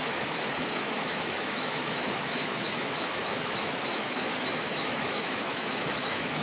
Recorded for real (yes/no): no